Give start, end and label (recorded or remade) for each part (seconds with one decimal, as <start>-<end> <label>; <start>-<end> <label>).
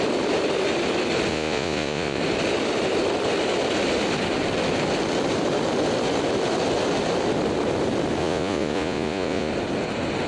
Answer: 0.0-1.3 recorded; 1.3-2.2 remade; 2.2-8.2 recorded; 8.2-9.5 remade; 9.5-10.3 recorded